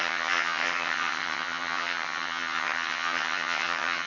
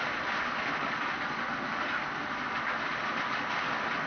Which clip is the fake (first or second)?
first